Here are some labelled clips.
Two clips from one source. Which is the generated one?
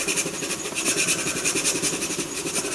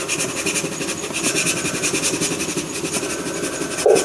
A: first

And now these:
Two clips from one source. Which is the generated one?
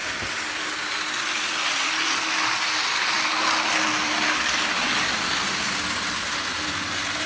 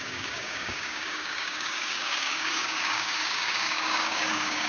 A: second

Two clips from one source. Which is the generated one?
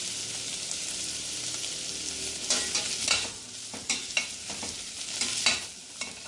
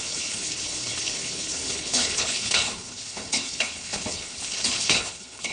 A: second